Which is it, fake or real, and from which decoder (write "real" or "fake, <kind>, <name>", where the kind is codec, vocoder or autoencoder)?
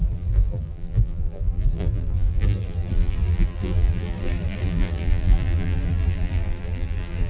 fake, vocoder, BigVGAN v2